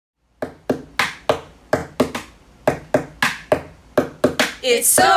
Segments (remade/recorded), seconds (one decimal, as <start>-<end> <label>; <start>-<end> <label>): 0.0-5.2 recorded